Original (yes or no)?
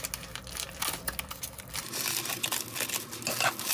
yes